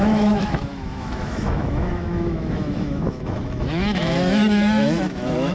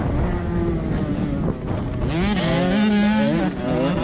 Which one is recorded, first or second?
second